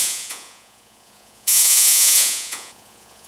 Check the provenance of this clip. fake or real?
fake